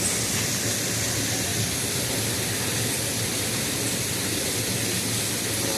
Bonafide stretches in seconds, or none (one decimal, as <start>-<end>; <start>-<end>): 0.0-5.8